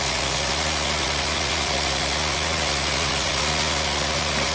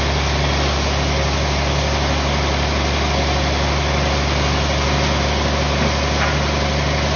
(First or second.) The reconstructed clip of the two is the first